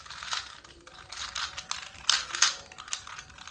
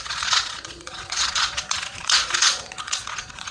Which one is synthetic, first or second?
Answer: second